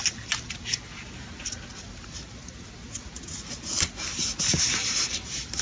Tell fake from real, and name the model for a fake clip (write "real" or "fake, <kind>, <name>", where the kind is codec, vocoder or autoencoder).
real